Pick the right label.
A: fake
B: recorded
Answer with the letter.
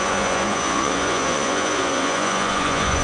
A